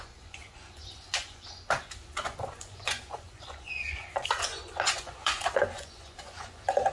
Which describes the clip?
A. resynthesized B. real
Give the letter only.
A